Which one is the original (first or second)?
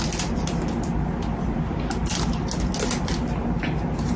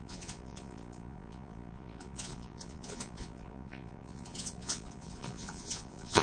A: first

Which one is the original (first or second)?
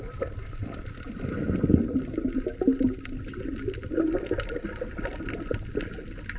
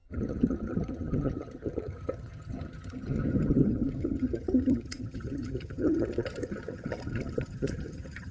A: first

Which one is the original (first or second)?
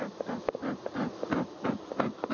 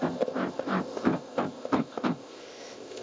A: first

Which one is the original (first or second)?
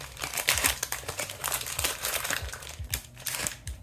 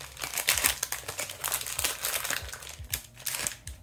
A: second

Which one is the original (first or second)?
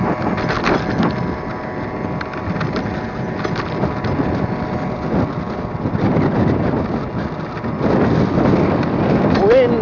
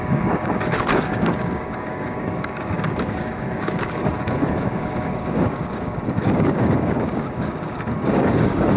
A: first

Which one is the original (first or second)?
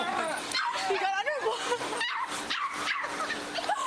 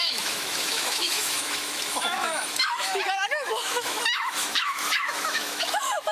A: first